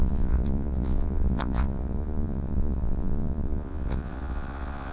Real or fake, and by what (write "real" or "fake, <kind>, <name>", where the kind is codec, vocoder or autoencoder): fake, vocoder, Vocos